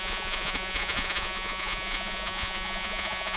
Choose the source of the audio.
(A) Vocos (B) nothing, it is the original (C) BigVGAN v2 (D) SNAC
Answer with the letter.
A